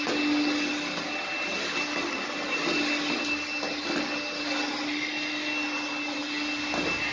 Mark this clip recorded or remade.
recorded